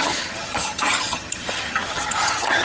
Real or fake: fake